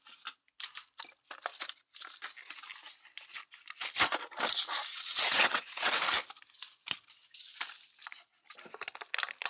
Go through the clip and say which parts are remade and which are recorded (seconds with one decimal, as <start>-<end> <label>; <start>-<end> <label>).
0.0-4.9 recorded; 4.9-5.9 remade; 5.9-9.5 recorded